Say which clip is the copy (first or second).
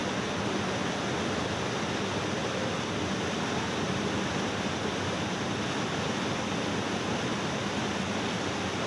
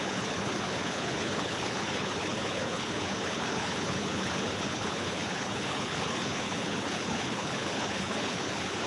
second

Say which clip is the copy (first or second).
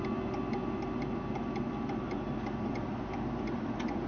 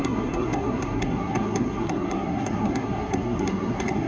second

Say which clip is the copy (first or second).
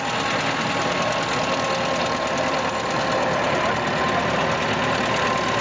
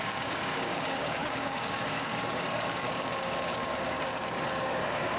second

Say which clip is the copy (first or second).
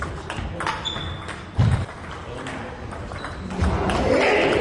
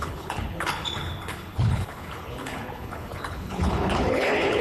second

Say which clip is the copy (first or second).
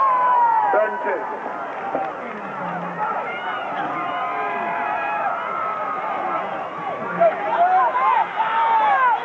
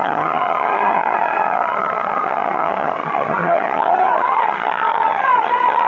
second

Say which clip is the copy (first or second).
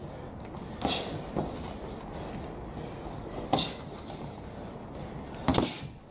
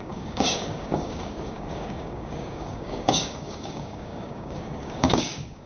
second